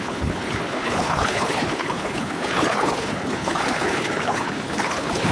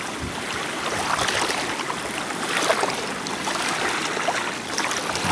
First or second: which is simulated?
first